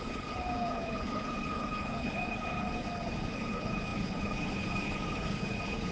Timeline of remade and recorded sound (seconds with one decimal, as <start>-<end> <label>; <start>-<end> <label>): 0.0-5.9 remade